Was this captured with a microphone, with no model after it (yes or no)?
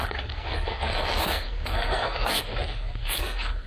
no